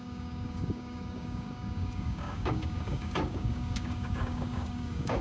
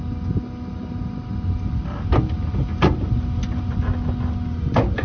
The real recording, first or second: second